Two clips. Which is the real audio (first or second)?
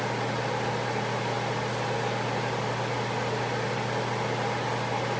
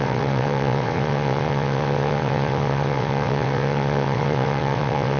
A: first